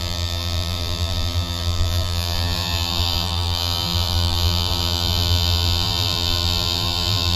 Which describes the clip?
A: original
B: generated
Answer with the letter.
B